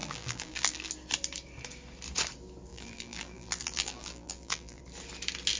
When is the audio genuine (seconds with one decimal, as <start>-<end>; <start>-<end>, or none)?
0.9-2.7; 4.8-5.6